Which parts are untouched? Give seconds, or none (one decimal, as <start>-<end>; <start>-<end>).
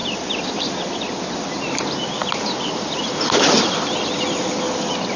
0.0-5.2